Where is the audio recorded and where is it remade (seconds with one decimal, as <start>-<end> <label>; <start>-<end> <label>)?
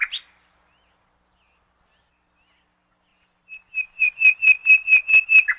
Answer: 0.0-3.1 recorded; 3.1-4.1 remade; 4.1-5.6 recorded